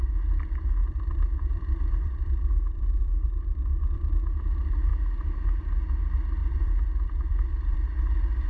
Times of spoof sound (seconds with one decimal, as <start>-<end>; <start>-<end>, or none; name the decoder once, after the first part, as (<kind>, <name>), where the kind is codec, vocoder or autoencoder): 0.8-4.1 (vocoder, BigVGAN v2); 6.4-8.5